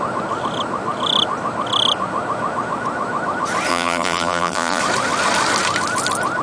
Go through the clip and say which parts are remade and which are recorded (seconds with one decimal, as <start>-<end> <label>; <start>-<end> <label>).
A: 0.0-3.7 recorded; 3.7-4.8 remade; 4.8-6.4 recorded